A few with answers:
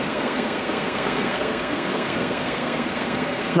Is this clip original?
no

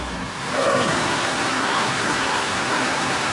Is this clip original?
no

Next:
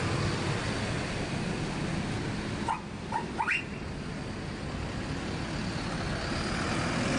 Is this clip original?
yes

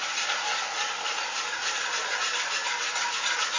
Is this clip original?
yes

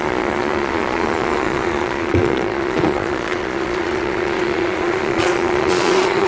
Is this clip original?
no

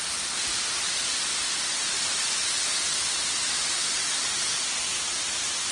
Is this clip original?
yes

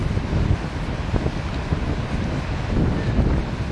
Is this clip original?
yes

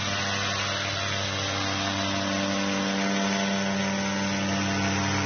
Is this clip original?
yes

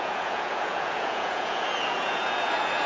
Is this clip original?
no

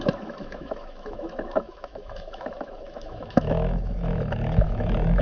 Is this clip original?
no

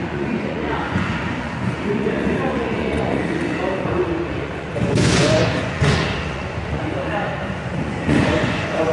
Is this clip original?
no